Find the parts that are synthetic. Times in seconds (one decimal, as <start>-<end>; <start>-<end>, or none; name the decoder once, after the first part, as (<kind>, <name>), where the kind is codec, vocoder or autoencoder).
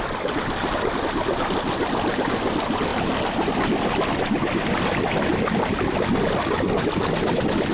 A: none